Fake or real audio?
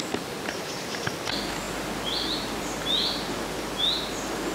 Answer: real